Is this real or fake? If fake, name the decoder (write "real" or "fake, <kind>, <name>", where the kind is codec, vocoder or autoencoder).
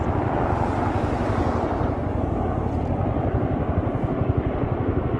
real